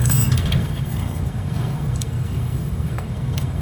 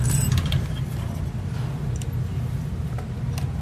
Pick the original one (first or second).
second